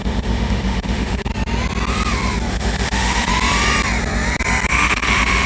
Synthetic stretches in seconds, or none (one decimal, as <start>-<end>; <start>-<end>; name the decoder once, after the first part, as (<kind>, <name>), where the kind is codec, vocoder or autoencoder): 0.0-1.3 (autoencoder, DAC-VAE); 2.5-3.3; 4.7-5.5